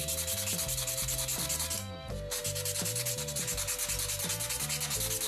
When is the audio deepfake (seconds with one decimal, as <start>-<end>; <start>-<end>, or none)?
none